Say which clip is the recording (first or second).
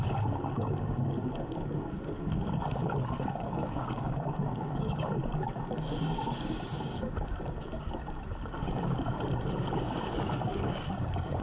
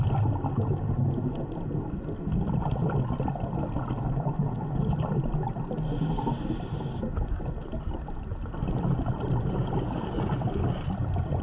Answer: second